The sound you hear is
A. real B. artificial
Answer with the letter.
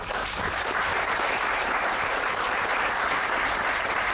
B